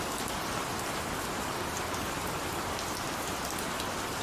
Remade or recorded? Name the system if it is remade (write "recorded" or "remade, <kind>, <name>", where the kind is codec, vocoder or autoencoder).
recorded